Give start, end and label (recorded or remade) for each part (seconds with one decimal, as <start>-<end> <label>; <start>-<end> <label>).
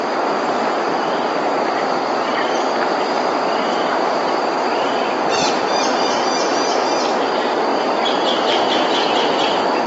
0.0-3.9 recorded; 3.9-5.0 remade; 5.0-9.9 recorded